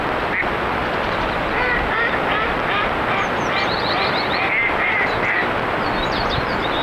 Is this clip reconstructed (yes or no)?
no